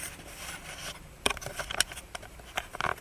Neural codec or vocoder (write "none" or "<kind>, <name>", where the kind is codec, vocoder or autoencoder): none